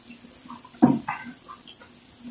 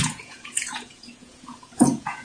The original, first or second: first